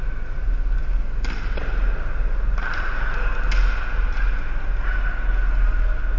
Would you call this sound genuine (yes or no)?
yes